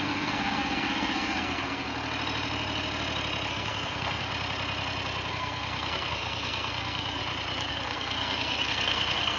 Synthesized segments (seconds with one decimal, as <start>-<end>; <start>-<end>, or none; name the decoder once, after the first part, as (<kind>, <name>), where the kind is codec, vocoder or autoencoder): 0.0-1.9 (codec, SNAC); 3.5-4.3; 5.3-7.2; 7.7-9.4